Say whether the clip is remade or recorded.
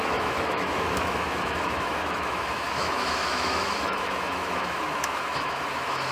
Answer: remade